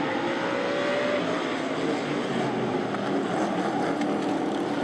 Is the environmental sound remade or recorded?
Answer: recorded